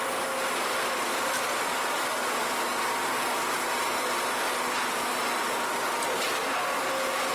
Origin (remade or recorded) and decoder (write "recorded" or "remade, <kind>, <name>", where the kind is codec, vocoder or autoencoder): recorded